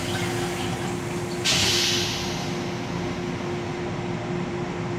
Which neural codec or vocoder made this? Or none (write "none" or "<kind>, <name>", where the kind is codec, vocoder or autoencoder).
none